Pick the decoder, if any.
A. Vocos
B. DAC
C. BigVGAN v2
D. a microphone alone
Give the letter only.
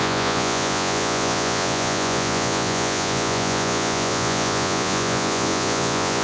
A